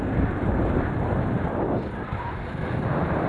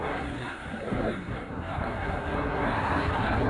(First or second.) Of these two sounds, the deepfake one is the second